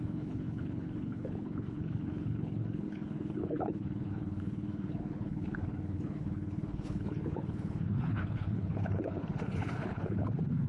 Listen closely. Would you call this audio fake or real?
fake